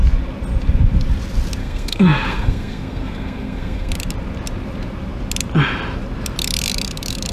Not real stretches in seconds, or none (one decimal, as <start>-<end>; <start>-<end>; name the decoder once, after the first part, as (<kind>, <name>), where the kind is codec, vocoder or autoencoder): 1.6-3.9 (codec, SNAC)